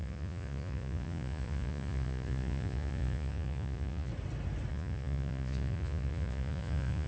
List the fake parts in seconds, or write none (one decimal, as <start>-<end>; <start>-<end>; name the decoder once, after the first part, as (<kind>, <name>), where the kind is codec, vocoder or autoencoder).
0.0-4.1 (vocoder, Vocos); 4.7-7.1